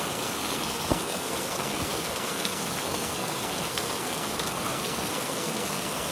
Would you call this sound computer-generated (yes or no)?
yes